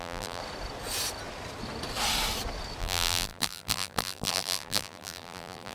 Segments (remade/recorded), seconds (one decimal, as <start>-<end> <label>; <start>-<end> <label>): 0.0-0.4 remade; 0.4-2.8 recorded; 2.8-5.7 remade

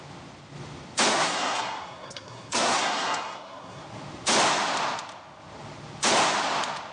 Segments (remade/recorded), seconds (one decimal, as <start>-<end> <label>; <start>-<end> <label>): 0.0-1.1 recorded; 1.1-3.8 remade; 3.8-6.9 recorded

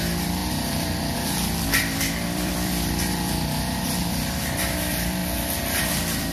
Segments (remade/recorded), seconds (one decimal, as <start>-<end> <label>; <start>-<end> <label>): 0.0-5.2 remade; 5.2-5.8 recorded; 5.8-6.3 remade

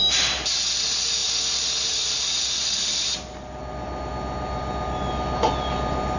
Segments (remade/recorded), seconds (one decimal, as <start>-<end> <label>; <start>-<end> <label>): 0.0-6.2 recorded

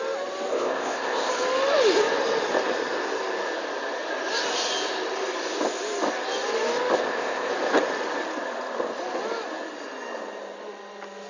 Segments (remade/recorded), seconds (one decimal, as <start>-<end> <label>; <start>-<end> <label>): 0.0-0.5 recorded; 0.5-1.3 remade; 1.3-7.0 recorded; 7.0-7.5 remade; 7.5-11.3 recorded